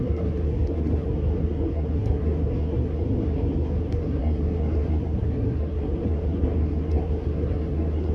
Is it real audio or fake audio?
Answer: fake